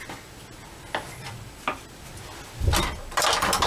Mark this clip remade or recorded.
recorded